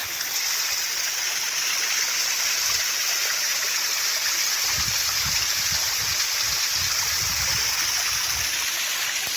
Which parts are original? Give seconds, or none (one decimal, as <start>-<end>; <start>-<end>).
0.0-9.4